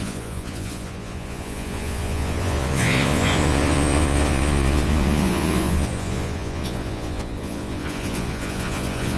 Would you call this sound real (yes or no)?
no